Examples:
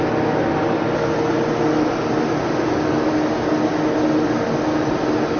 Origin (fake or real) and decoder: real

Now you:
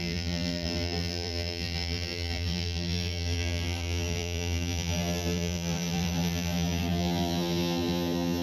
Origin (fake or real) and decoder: fake, vocoder, BigVGAN v2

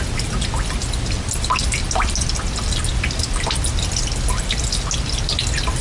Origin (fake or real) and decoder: real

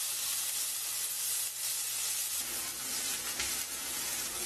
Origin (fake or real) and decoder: real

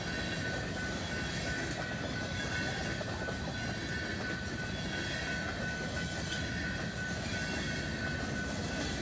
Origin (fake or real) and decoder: real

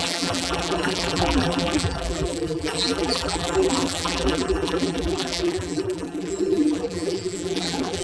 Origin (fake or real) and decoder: fake, vocoder, BigVGAN v2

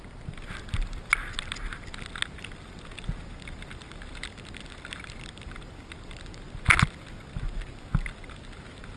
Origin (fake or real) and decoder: real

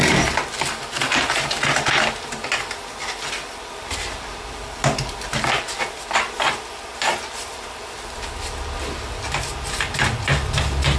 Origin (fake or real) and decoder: fake, vocoder, BigVGAN v2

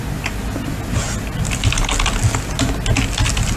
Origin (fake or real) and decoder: real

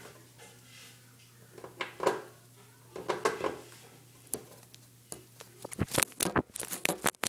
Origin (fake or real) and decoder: real